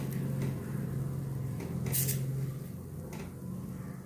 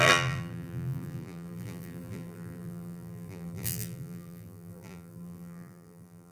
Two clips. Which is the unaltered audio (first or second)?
first